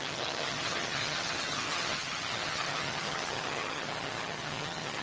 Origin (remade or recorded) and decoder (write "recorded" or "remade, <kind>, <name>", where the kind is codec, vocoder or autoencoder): remade, vocoder, HiFi-GAN